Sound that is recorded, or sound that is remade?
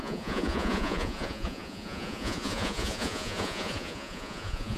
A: remade